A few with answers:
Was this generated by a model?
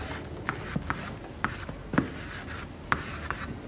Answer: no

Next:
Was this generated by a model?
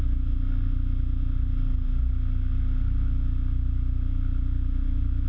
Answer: no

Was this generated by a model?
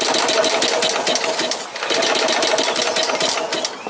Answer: no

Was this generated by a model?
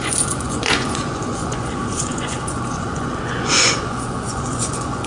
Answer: yes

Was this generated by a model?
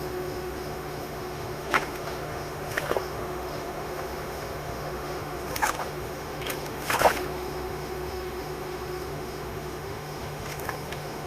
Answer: yes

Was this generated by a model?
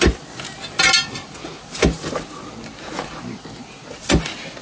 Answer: no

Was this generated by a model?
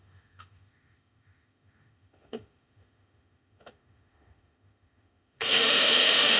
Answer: yes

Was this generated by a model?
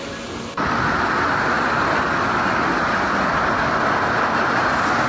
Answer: no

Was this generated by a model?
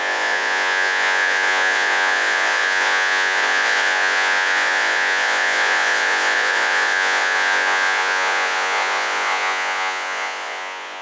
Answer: yes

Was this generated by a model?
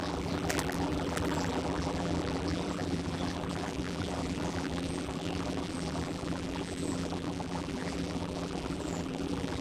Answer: yes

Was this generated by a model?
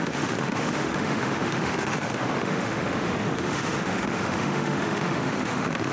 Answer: yes